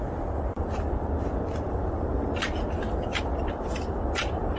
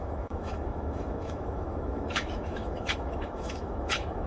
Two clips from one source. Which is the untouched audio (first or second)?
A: first